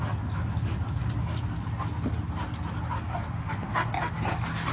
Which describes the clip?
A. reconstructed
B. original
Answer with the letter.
B